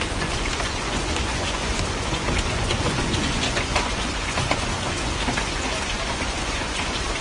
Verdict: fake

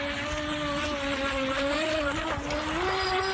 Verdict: real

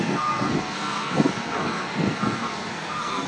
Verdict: fake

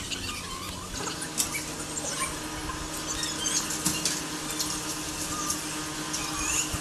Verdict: real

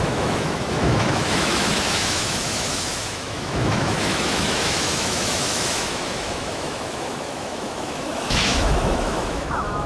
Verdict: fake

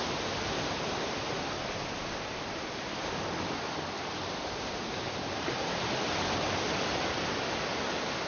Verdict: real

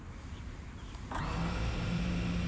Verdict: real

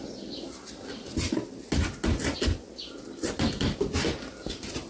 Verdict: real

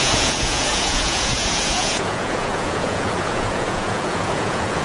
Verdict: fake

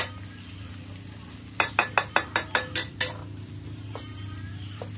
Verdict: real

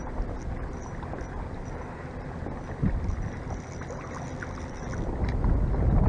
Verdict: real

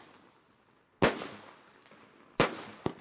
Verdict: real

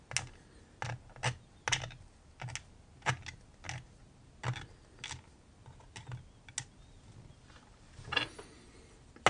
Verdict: real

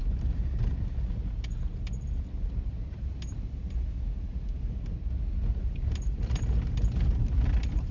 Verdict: real